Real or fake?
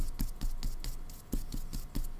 real